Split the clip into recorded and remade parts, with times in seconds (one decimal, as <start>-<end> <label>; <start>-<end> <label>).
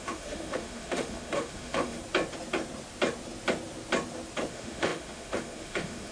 0.0-2.0 remade; 2.0-4.5 recorded; 4.5-6.1 remade